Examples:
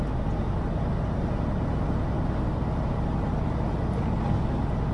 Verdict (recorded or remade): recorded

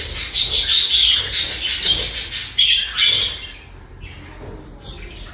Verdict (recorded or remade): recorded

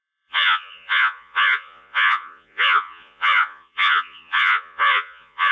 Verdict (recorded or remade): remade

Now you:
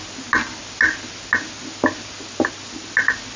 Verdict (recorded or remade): recorded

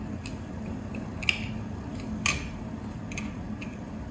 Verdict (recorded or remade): recorded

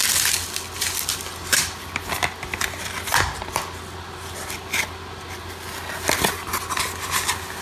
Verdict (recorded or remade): recorded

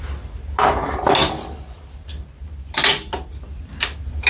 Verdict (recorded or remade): recorded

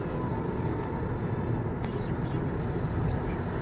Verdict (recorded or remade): recorded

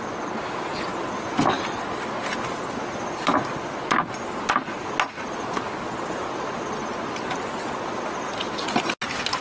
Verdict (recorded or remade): recorded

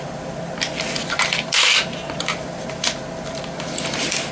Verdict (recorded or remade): remade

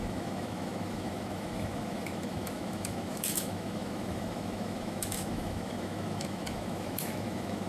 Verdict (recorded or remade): remade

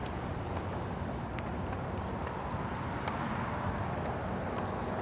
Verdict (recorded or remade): recorded